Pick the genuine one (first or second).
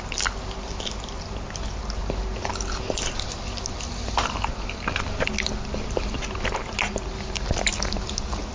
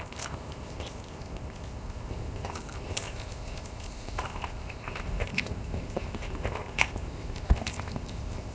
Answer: first